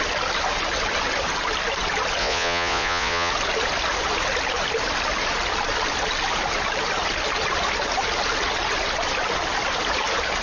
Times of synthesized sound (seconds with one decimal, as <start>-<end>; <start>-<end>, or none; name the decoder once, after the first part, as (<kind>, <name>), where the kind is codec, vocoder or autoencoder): 2.2-3.3 (vocoder, Vocos)